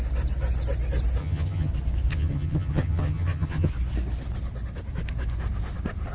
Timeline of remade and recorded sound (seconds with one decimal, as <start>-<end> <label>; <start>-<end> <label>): 0.0-1.2 recorded; 1.2-1.7 remade; 1.7-2.1 recorded; 2.1-3.7 remade; 3.7-6.1 recorded